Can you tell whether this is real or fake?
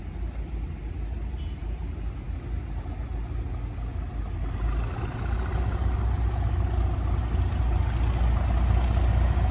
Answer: real